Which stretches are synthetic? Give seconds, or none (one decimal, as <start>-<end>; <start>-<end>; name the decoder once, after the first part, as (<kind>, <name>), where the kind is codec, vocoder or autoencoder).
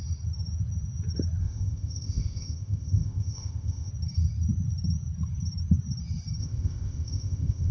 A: 1.4-3.9 (codec, ZipCodec); 6.4-7.7